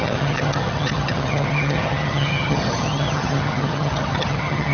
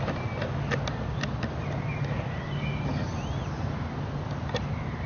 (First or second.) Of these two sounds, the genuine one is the second